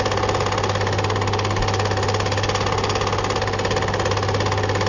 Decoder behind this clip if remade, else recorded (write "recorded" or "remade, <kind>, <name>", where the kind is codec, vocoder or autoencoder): recorded